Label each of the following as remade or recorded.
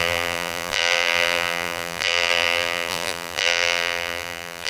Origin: remade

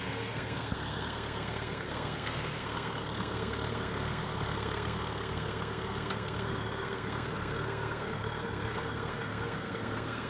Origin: remade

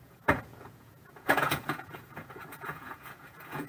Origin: remade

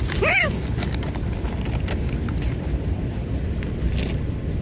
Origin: recorded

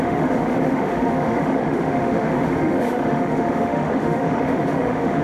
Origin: remade